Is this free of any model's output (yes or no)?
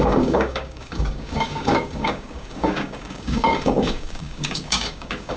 no